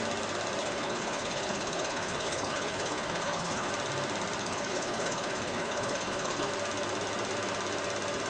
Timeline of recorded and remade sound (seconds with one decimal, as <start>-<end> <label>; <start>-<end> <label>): 0.0-0.6 recorded; 0.6-3.7 remade; 3.7-4.4 recorded; 4.4-6.5 remade; 6.5-8.3 recorded